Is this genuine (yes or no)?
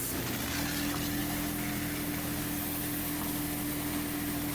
yes